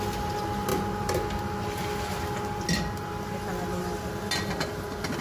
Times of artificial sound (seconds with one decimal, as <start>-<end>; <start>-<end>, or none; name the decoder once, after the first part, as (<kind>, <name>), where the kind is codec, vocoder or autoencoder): none